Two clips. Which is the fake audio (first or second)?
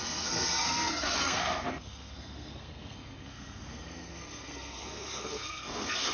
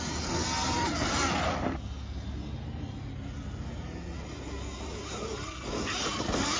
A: first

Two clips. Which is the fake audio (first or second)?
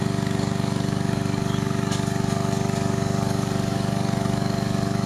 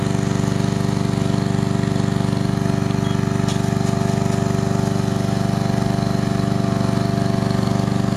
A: first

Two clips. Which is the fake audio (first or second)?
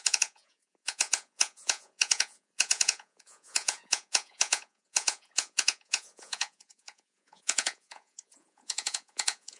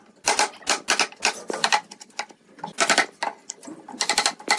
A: first